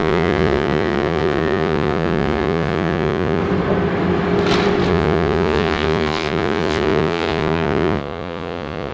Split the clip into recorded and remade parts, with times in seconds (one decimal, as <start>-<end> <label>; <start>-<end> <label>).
0.0-3.4 remade; 3.4-4.9 recorded; 4.9-8.9 remade